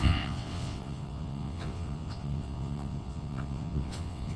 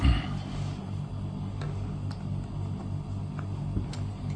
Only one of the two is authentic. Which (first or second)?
second